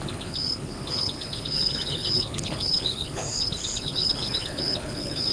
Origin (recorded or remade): remade